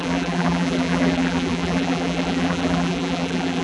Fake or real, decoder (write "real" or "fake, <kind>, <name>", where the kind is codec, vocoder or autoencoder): fake, vocoder, BigVGAN v2